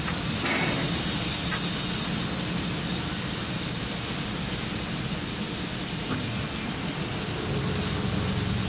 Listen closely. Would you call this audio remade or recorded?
recorded